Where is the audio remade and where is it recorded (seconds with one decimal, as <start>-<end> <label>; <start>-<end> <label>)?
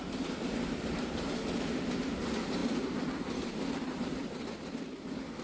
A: 0.0-5.4 recorded